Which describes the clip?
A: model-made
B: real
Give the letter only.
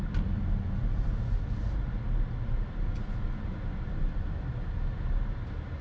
B